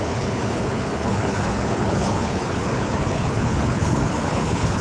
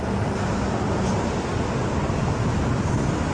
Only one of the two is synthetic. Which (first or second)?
first